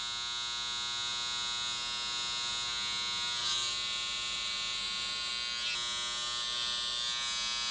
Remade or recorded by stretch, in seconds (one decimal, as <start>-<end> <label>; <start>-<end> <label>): 0.0-3.4 recorded; 3.4-5.3 remade; 5.3-7.7 recorded